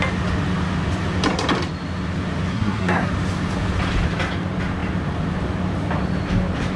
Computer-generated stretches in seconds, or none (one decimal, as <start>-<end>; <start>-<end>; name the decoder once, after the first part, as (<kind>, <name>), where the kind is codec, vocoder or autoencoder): 2.5-3.1 (codec, SNAC)